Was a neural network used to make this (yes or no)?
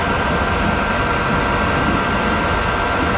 no